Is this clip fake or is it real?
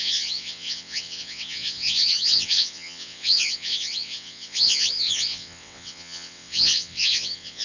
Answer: fake